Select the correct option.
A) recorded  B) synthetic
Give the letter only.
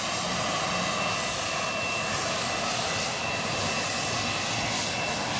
A